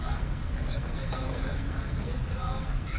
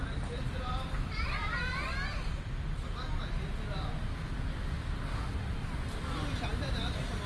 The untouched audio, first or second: second